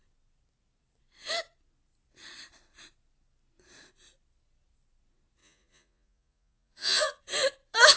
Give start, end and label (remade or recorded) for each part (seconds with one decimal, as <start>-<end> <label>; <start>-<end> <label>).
0.0-5.4 recorded; 5.4-7.2 remade; 7.2-8.0 recorded